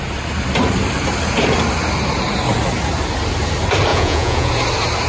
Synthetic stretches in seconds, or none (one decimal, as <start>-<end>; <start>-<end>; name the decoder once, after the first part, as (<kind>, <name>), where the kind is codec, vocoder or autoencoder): 3.9-4.5 (vocoder, Vocos)